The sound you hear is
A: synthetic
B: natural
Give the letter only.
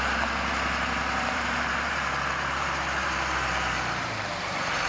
A